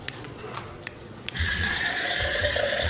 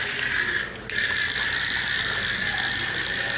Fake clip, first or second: first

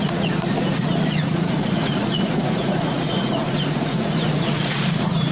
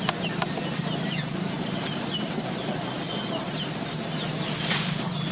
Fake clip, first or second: first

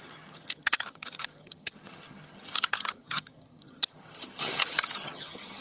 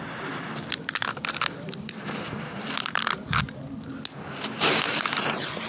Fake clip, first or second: first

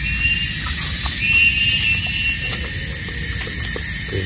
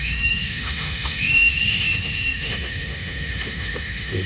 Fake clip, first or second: second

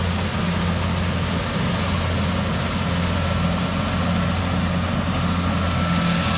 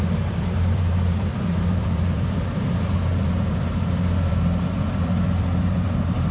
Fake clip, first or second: second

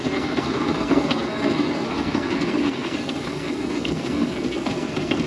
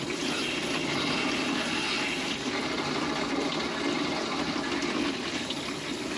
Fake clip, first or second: first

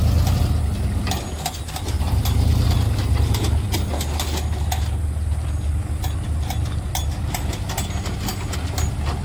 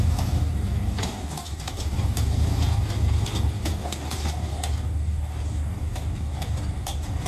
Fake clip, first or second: second